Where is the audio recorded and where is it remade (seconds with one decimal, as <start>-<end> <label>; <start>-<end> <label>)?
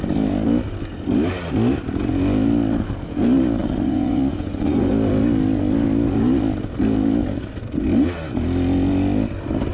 0.0-3.6 recorded; 3.6-4.9 remade; 4.9-9.7 recorded